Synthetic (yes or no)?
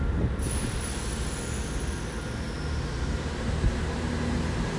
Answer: no